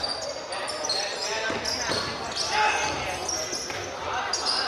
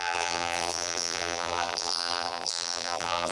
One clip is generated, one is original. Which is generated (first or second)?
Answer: second